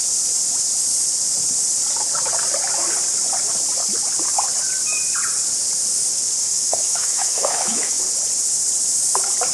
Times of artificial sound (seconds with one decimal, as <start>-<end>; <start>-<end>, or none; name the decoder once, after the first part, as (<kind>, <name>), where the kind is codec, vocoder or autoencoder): 6.4-8.0 (autoencoder, DAC-VAE)

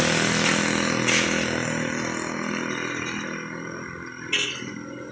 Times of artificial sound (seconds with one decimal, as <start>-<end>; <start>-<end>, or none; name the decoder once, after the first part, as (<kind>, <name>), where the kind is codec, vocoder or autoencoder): none

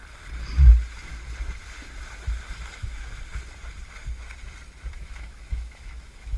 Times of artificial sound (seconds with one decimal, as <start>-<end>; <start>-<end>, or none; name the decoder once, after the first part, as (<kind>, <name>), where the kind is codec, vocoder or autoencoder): 2.6-3.2 (autoencoder, DAC-VAE); 4.9-6.4

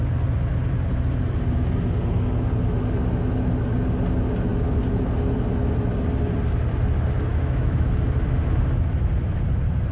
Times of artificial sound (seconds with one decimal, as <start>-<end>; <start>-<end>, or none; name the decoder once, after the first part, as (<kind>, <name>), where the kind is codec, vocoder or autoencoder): 7.3-7.9 (autoencoder, DAC-VAE)

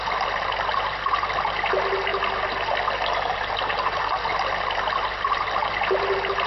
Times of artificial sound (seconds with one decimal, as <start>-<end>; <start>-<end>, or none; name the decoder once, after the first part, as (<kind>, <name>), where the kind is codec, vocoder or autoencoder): none